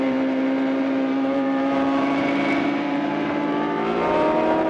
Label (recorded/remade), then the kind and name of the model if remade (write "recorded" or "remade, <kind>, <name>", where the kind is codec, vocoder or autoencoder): remade, vocoder, BigVGAN v2